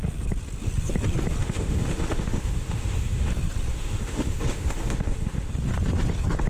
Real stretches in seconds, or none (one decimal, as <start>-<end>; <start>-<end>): 0.0-1.4; 3.3-3.7; 5.5-6.5